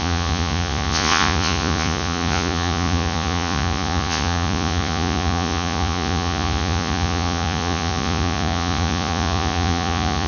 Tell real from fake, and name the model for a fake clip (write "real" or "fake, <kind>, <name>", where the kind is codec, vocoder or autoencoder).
fake, vocoder, Vocos